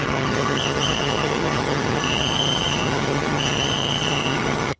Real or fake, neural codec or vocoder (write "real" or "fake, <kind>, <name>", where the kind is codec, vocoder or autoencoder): fake, vocoder, HiFi-GAN